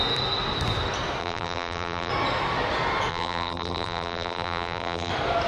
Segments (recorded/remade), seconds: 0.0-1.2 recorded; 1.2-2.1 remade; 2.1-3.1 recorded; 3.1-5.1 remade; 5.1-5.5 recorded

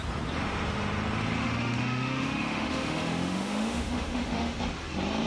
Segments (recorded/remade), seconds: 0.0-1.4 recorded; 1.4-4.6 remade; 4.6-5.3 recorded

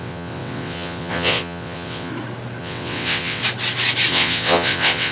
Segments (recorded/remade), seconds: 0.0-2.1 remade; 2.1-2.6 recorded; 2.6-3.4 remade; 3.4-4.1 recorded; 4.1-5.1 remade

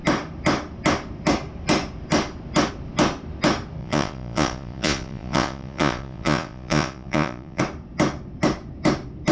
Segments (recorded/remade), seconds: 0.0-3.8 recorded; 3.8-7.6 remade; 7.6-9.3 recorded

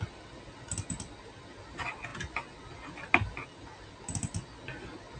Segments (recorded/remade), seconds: 0.0-5.2 recorded

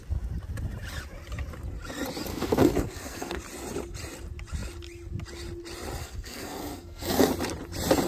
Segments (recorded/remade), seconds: 0.0-2.3 recorded; 2.3-3.4 remade; 3.4-6.0 recorded; 6.0-7.3 remade; 7.3-8.1 recorded